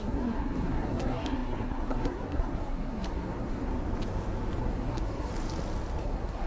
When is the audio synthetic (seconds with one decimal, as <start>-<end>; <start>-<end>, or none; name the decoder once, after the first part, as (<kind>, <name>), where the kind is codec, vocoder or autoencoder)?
0.0-3.7 (codec, SNAC); 4.6-5.3; 6.0-6.5